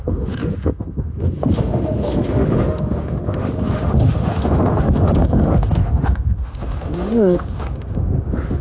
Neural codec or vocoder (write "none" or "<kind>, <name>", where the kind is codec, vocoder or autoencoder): autoencoder, DAC-VAE